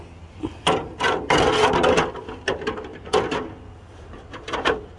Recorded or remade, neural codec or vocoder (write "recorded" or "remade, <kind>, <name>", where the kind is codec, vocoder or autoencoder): recorded